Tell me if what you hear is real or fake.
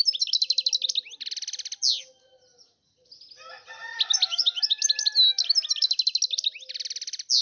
real